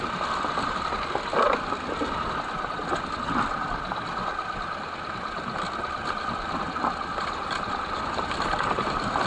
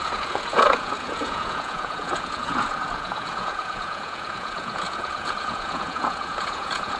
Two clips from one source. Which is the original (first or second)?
first